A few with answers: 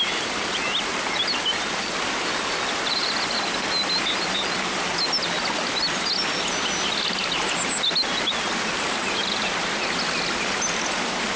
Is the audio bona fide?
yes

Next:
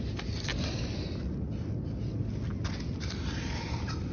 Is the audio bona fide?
yes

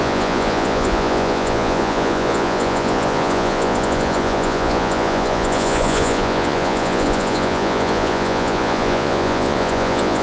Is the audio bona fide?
no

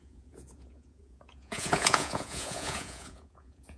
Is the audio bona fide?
no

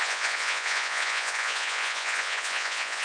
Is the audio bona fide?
no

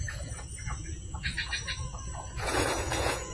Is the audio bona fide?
no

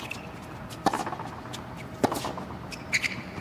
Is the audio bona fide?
yes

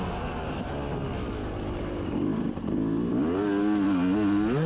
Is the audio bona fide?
yes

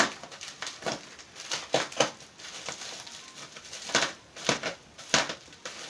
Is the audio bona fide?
yes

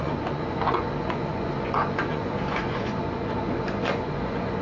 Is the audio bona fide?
no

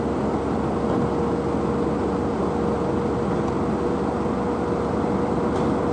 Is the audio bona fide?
yes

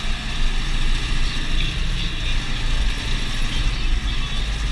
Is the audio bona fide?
yes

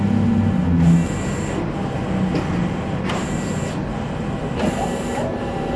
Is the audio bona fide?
yes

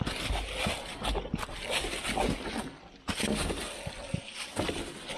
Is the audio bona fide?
yes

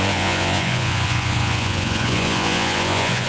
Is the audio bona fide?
no